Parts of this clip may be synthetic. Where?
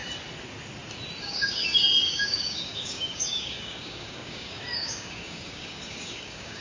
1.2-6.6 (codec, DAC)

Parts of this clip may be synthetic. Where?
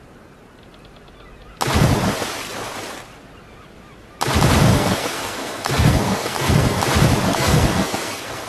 4.7-6.8 (codec, SNAC); 7.3-8.5